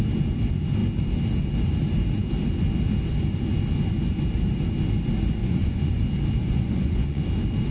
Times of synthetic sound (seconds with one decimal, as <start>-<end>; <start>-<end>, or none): 5.4-6.0; 6.4-7.2